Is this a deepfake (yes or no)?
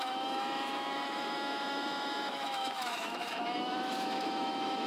yes